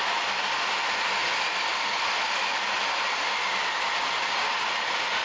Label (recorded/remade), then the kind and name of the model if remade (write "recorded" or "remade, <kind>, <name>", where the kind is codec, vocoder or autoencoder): recorded